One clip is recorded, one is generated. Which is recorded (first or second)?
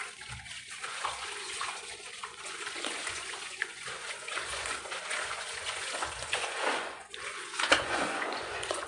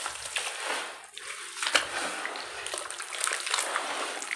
second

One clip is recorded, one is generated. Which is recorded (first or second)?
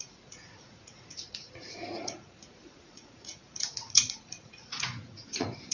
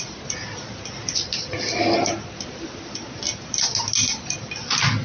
second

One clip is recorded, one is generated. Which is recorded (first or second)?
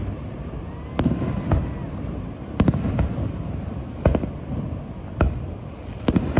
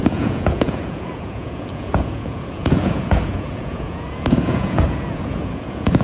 first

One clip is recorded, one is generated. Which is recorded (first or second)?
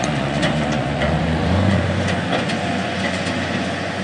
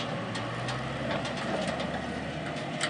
second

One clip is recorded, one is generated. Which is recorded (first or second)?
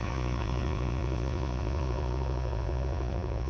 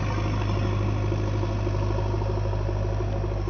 second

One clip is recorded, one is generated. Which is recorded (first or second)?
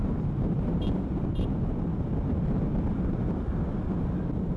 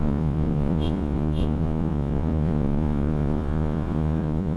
first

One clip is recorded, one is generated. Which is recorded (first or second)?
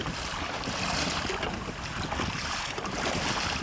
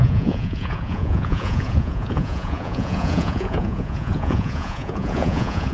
first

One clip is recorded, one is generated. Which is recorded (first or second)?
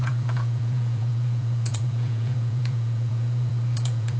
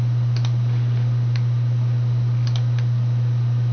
second